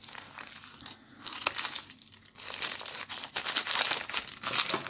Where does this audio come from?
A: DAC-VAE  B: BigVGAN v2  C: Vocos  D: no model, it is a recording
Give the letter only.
D